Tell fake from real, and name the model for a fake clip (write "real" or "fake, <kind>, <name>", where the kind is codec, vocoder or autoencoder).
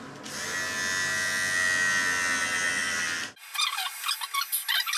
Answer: real